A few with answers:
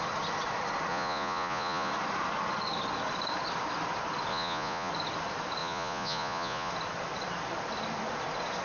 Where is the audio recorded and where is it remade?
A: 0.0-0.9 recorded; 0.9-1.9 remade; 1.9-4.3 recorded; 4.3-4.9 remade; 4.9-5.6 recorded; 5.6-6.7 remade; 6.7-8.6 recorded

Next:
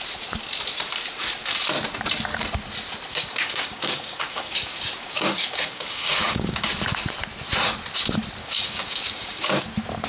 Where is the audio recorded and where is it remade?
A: 0.0-3.1 recorded; 3.1-6.7 remade; 6.7-8.4 recorded; 8.4-9.6 remade; 9.6-10.1 recorded

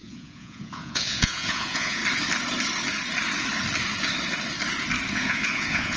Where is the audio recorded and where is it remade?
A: 0.0-2.0 remade; 2.0-5.1 recorded; 5.1-6.0 remade

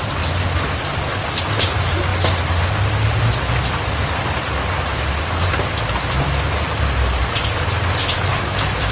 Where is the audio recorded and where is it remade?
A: 0.0-8.9 recorded